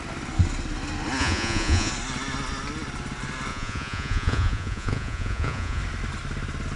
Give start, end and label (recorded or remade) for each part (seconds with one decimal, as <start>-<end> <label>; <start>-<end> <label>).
0.0-1.2 recorded; 1.2-1.9 remade; 1.9-3.5 recorded; 3.5-5.8 remade; 5.8-6.8 recorded